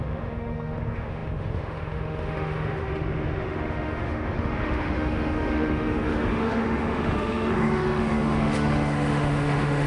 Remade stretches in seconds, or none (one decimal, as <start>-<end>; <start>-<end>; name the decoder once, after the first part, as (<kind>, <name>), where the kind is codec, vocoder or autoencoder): 0.0-9.9 (autoencoder, DAC-VAE)